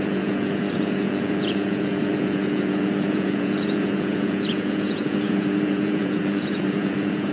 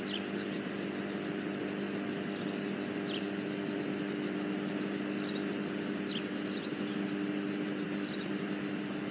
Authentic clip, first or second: second